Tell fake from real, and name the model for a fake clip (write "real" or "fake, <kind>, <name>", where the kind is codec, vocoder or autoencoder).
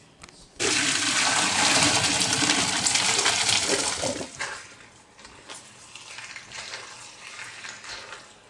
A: fake, vocoder, BigVGAN v2